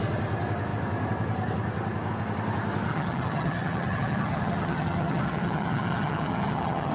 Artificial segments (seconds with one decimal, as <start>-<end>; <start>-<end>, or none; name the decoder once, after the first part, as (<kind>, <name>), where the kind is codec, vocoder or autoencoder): 2.9-6.9 (vocoder, HiFi-GAN)

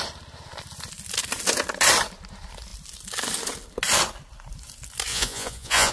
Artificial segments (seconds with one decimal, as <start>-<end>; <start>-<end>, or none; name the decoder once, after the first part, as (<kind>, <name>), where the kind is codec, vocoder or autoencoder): 5.1-5.9 (vocoder, Vocos)